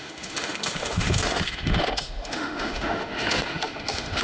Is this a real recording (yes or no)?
no